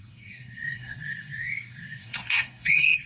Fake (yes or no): yes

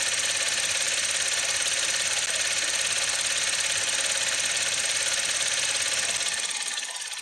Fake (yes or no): no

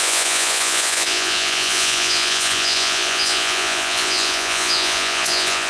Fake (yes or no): yes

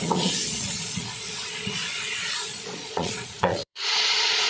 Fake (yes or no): yes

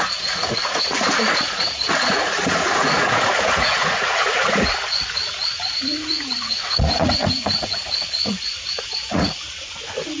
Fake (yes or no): yes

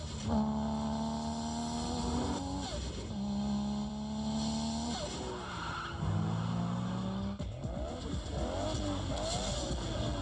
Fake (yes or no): no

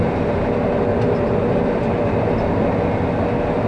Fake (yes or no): no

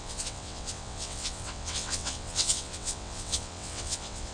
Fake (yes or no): yes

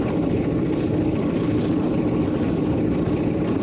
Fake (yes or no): yes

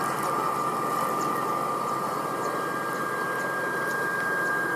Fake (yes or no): no